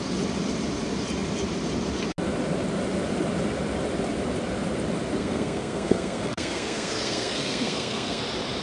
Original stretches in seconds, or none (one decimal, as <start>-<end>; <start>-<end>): 0.0-5.2; 8.2-8.6